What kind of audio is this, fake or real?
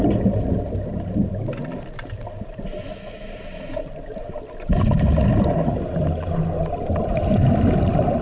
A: real